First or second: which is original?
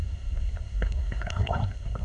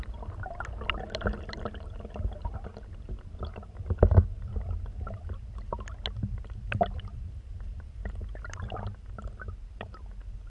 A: second